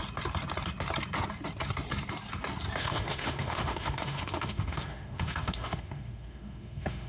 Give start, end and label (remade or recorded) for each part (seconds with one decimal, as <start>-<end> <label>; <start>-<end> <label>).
0.0-2.8 recorded; 2.8-7.1 remade